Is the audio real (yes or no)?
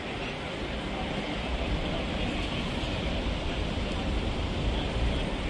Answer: yes